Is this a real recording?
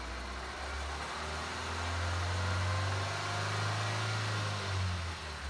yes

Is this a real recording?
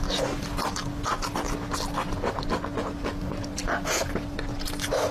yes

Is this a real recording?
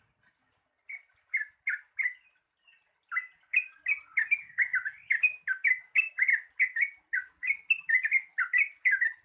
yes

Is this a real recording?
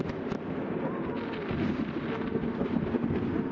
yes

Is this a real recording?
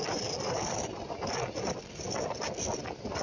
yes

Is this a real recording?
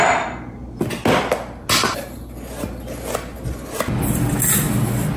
yes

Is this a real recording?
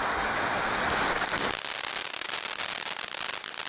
yes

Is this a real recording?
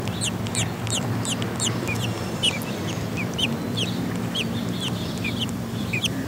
no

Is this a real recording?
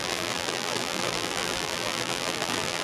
no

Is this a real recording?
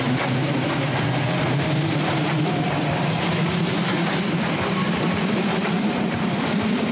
yes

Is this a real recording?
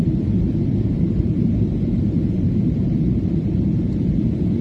no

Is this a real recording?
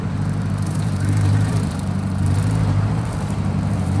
no